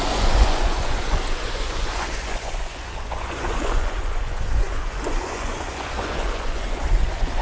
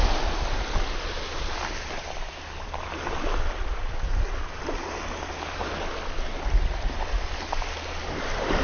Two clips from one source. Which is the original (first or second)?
second